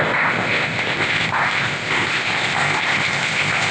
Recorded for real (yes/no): no